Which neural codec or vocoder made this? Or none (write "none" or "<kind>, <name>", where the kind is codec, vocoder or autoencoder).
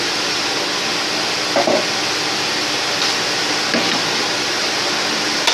none